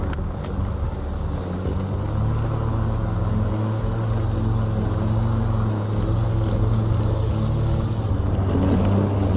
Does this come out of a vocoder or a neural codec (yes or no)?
no